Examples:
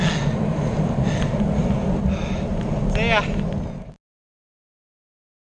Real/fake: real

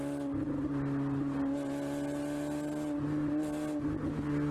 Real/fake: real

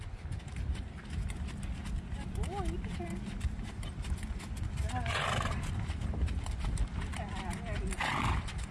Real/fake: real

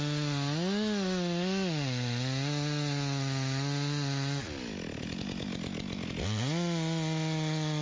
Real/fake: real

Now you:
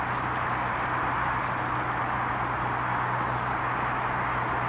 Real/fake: real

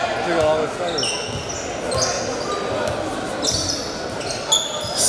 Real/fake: real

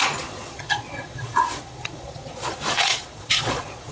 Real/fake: fake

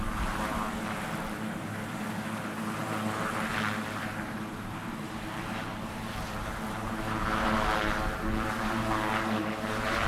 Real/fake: fake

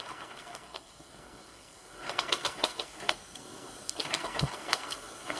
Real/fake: fake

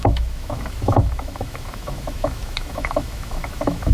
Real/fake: fake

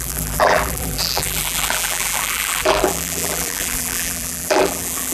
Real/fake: fake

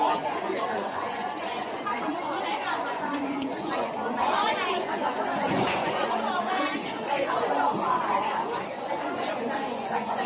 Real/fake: fake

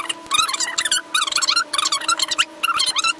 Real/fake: real